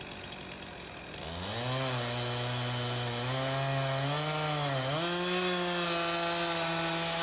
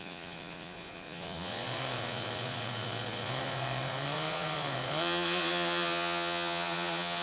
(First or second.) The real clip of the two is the first